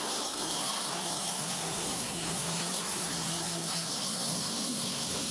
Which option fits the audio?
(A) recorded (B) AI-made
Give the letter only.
B